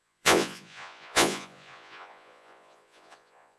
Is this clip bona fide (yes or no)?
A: no